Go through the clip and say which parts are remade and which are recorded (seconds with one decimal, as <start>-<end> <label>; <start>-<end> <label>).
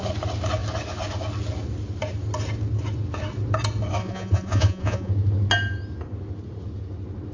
0.0-4.0 recorded; 4.0-5.1 remade; 5.1-7.3 recorded